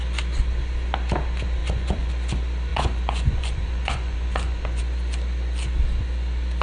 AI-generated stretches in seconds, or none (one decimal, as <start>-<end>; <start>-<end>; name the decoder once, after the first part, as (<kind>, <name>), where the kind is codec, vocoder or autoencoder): 1.6-2.1 (vocoder, Vocos); 2.7-4.8